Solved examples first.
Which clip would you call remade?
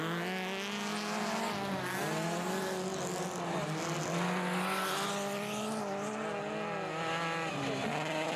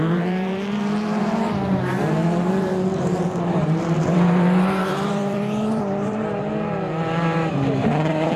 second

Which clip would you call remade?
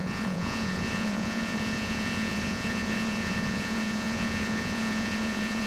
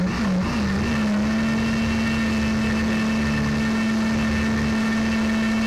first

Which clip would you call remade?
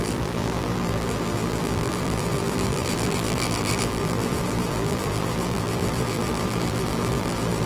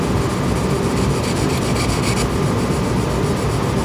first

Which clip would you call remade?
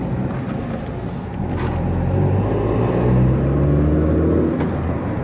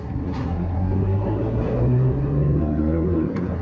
second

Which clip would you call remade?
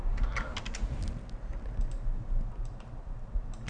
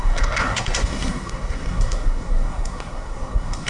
second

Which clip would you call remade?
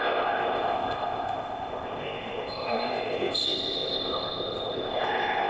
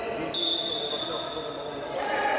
first